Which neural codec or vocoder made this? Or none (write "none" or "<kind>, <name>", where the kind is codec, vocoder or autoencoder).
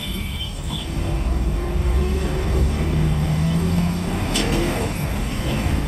codec, DAC